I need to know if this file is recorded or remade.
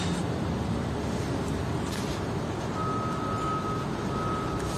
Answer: recorded